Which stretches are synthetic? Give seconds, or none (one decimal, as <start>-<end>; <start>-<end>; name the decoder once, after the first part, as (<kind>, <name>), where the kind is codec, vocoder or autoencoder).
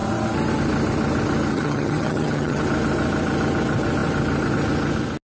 1.5-2.6 (vocoder, HiFi-GAN)